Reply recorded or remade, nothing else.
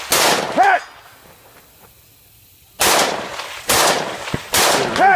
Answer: recorded